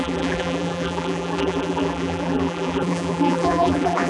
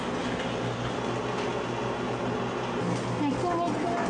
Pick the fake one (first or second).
first